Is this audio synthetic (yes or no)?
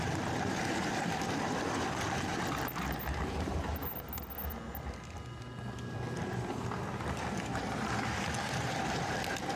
no